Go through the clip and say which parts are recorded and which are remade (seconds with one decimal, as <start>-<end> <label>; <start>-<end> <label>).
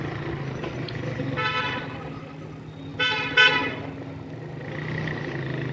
0.0-5.7 recorded